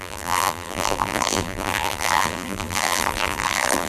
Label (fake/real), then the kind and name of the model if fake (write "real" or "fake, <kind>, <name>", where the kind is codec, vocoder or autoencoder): fake, vocoder, BigVGAN v2